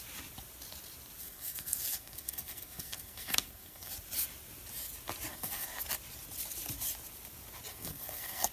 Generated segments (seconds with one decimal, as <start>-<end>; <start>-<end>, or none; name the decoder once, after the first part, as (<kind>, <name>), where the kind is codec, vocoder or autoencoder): 1.2-3.9 (codec, SNAC); 5.3-5.8; 7.7-8.5